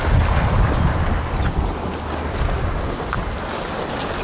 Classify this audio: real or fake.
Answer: real